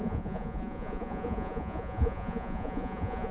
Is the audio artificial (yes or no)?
yes